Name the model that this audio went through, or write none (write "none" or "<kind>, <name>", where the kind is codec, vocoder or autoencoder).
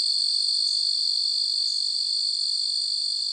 none